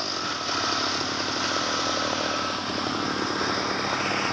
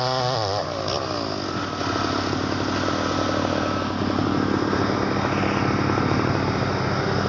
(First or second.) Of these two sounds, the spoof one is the first